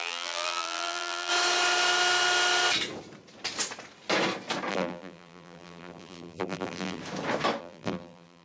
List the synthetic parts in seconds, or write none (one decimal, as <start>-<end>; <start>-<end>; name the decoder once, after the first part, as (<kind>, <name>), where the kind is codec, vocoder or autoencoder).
0.0-1.3 (vocoder, BigVGAN v2); 4.7-7.0; 7.6-8.4